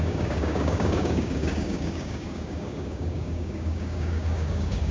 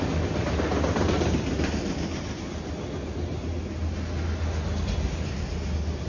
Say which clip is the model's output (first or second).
first